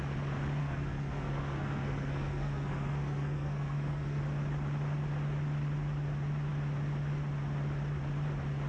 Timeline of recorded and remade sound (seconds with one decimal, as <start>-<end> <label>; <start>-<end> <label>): 0.0-0.6 recorded; 0.6-4.2 remade; 4.2-8.7 recorded